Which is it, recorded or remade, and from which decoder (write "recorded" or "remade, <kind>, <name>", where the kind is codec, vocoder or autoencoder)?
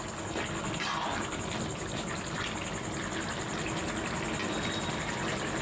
recorded